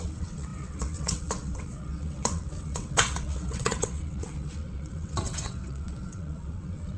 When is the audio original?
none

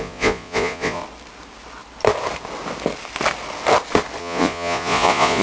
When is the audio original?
1.0-4.2